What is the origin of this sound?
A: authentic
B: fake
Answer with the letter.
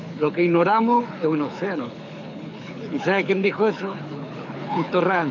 B